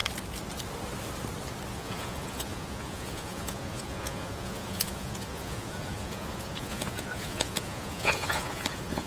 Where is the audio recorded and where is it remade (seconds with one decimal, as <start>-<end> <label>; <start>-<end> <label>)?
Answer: 0.0-1.7 recorded; 1.7-9.1 remade